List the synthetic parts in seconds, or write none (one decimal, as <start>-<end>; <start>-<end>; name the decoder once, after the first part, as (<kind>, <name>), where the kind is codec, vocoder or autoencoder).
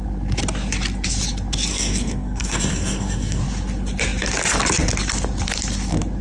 1.7-3.4 (codec, SNAC)